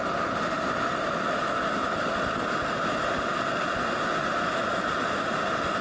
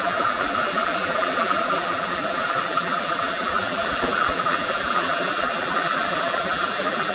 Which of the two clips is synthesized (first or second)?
second